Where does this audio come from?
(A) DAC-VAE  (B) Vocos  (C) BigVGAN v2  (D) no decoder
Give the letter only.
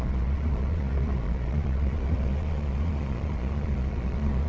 B